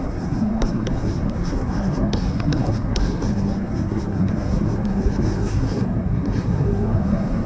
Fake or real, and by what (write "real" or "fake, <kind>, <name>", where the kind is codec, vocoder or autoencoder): fake, codec, SNAC